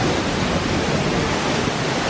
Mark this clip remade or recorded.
recorded